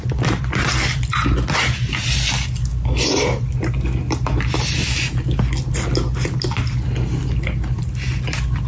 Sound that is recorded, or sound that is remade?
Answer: recorded